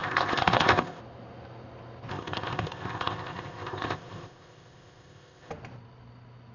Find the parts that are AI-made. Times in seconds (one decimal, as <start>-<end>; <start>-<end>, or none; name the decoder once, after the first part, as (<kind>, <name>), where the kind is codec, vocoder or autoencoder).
0.0-1.0 (codec, ZipCodec); 2.1-5.5